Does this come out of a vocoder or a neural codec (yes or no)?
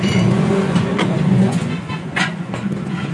yes